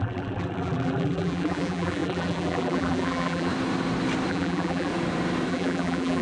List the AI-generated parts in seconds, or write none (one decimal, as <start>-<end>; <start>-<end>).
0.0-3.5; 4.3-4.9; 5.5-6.2